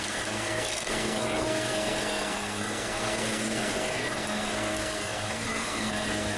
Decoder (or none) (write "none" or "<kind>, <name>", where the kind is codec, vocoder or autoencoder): codec, SNAC